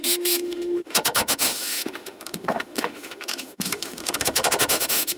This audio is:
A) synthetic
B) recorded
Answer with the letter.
A